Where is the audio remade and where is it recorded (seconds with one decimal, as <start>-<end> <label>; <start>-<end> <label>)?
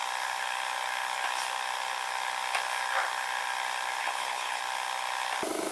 0.0-4.0 recorded; 4.0-4.6 remade; 4.6-5.7 recorded